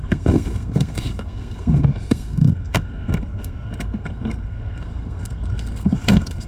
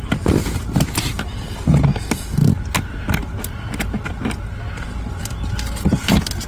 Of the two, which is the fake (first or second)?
first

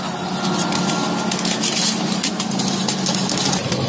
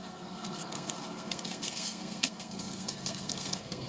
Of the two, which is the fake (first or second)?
second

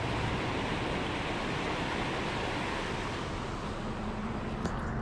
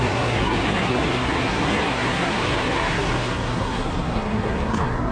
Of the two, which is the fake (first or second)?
second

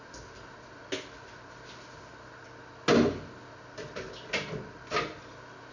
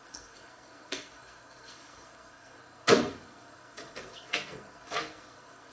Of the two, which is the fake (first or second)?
second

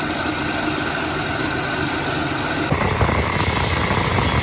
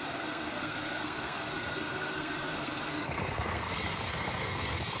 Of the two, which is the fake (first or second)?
second